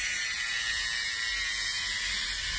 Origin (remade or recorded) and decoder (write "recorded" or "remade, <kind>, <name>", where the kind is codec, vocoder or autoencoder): recorded